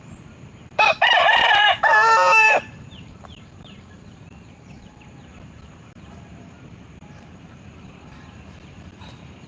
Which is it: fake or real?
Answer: fake